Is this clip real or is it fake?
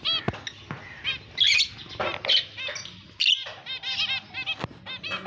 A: real